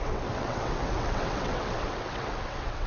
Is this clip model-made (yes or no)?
yes